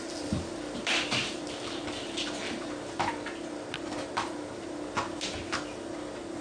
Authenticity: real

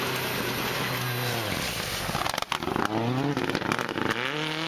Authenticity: real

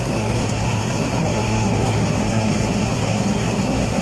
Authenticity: fake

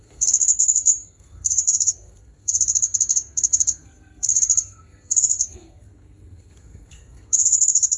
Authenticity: fake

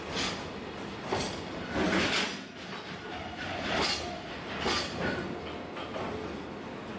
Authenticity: real